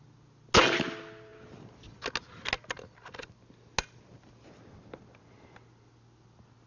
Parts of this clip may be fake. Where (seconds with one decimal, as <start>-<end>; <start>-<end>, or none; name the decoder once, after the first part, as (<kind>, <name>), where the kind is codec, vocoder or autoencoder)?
none